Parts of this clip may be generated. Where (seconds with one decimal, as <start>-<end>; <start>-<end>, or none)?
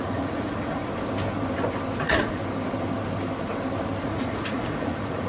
0.0-0.8; 2.0-2.4; 4.0-5.3